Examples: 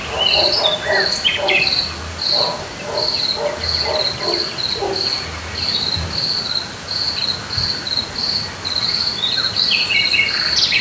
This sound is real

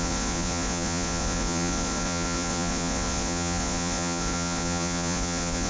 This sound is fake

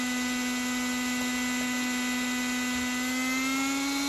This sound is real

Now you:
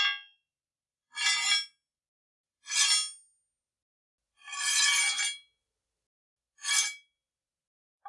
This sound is real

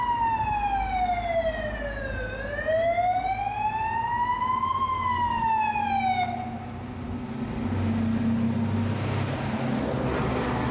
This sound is real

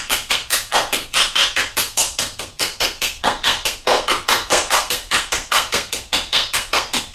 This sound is fake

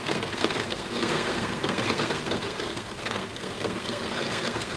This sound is fake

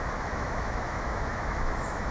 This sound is fake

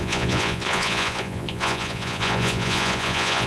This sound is fake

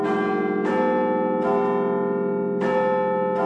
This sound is real